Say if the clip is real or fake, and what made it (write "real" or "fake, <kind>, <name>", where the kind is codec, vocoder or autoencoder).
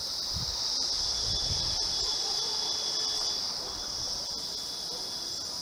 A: real